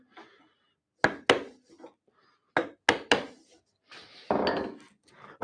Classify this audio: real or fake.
real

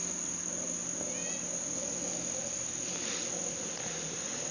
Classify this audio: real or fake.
real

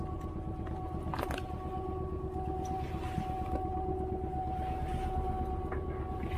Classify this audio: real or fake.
real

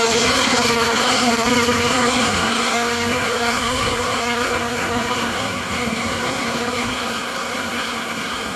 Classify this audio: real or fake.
fake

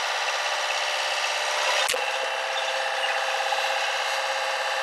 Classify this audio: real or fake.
real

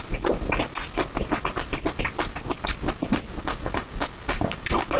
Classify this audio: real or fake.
real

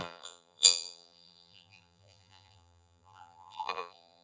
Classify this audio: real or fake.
fake